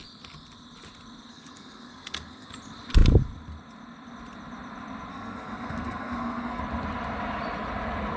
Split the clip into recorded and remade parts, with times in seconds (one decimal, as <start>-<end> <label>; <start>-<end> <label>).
0.0-1.3 recorded; 1.3-2.5 remade; 2.5-5.1 recorded; 5.1-6.6 remade; 6.6-8.2 recorded